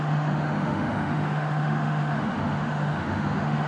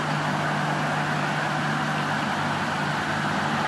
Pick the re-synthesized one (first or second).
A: first